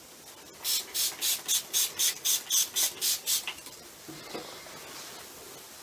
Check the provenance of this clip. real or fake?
real